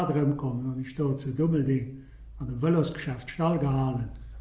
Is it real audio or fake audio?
real